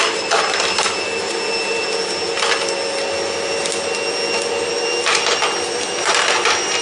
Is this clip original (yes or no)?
yes